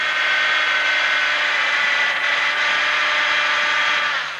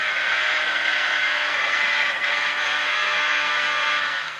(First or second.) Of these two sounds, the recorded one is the first